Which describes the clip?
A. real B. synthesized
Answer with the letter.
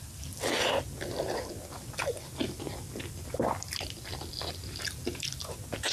A